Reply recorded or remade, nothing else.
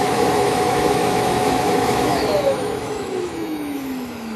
remade